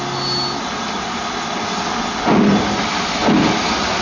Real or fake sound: real